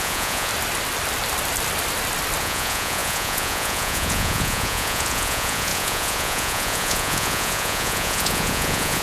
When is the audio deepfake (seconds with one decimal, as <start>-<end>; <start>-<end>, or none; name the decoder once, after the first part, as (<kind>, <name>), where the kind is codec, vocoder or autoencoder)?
0.0-0.5 (vocoder, Vocos); 2.4-9.0